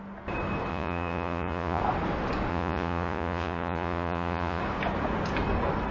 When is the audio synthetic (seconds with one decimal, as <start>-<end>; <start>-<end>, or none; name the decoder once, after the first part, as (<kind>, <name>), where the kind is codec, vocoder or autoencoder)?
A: 0.7-1.8 (vocoder, Vocos); 2.5-4.6